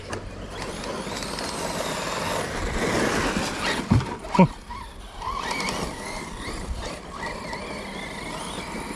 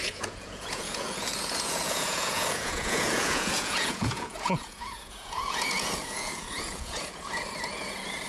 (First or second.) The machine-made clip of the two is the second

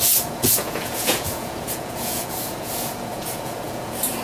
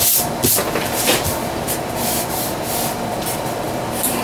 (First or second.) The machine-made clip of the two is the first